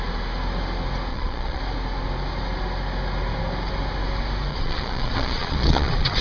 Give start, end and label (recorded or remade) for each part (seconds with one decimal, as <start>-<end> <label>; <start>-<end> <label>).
0.0-1.1 recorded; 1.1-1.6 remade; 1.6-4.5 recorded; 4.5-6.2 remade